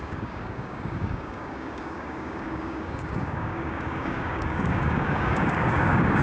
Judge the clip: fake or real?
fake